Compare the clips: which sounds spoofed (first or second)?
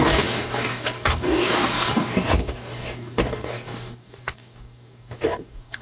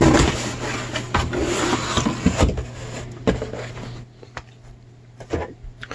first